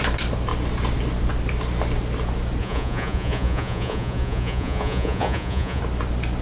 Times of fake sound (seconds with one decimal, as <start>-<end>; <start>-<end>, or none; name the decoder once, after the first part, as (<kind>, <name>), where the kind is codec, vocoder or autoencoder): 2.6-5.8 (vocoder, Vocos)